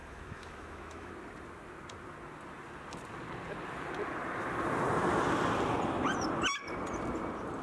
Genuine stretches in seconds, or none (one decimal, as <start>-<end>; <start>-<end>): 1.1-7.6